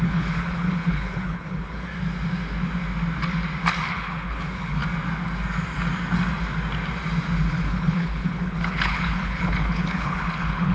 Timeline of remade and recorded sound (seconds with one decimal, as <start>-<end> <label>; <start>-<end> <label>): 0.0-1.9 remade; 1.9-3.8 recorded; 3.8-4.8 remade; 4.8-7.5 recorded; 7.5-10.7 remade